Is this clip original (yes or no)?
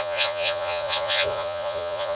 no